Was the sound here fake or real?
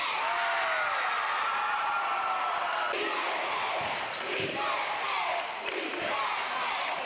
real